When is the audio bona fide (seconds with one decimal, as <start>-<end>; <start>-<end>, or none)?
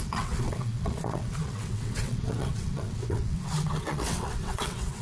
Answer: none